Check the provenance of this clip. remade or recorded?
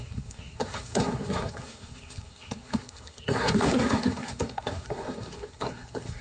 remade